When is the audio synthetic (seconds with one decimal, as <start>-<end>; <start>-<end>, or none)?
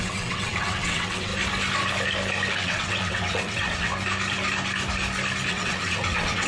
0.0-1.3; 2.5-3.9; 5.5-6.5